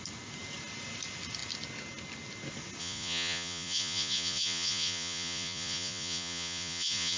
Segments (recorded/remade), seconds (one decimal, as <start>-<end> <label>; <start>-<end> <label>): 0.0-2.8 recorded; 2.8-7.2 remade